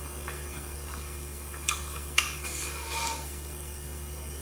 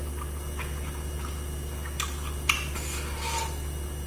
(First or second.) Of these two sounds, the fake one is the first